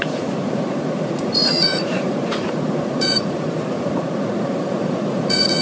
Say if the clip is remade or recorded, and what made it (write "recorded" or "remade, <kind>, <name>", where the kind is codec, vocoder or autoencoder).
remade, vocoder, Vocos